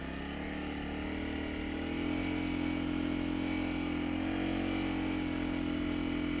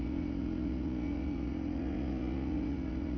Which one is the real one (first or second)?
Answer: first